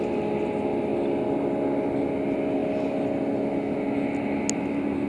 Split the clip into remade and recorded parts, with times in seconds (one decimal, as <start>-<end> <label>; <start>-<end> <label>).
0.0-5.1 recorded